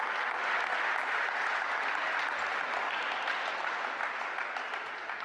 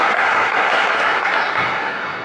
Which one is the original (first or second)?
first